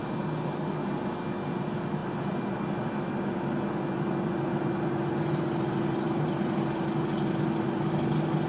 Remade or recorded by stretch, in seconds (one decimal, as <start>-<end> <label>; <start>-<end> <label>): 0.0-8.5 recorded